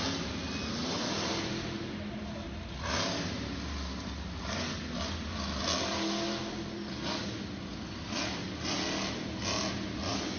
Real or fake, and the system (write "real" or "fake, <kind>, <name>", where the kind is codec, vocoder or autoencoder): real